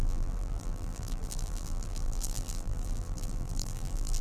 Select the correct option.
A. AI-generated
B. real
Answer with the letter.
A